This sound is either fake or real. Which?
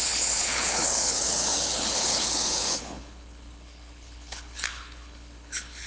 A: fake